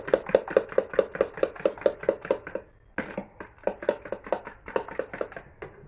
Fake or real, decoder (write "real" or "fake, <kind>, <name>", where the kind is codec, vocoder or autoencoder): real